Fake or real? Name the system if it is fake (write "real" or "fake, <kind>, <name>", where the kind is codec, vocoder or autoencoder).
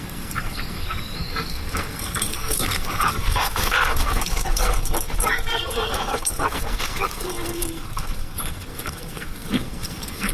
fake, codec, SNAC